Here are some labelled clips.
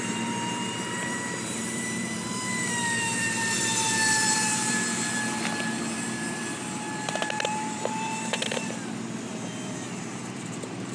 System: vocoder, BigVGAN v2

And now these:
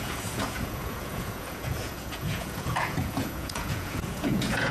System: vocoder, Vocos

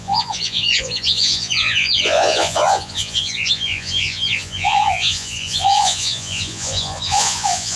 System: vocoder, Vocos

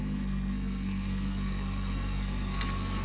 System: codec, SNAC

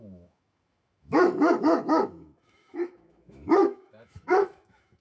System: autoencoder, DAC-VAE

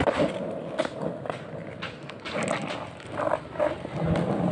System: none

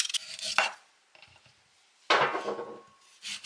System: none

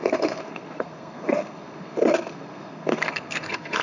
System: codec, SNAC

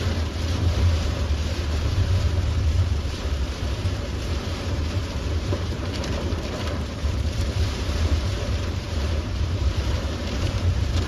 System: vocoder, BigVGAN v2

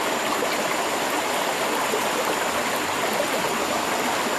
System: none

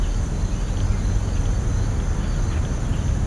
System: none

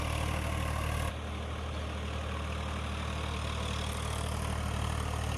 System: none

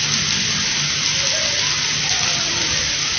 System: none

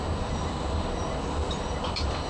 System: none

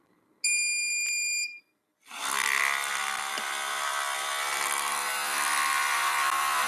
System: none